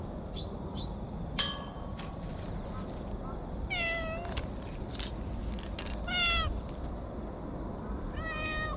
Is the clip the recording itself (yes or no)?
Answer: yes